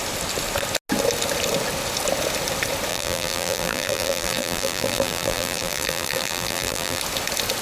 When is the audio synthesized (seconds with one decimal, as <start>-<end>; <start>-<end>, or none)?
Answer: 2.9-7.0